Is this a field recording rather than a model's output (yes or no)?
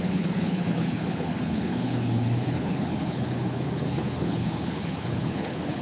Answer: no